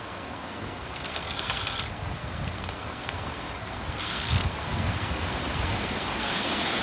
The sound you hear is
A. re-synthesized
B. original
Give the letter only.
A